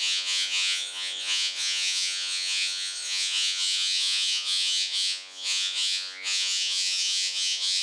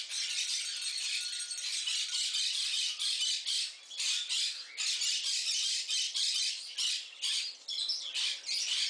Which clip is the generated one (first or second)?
first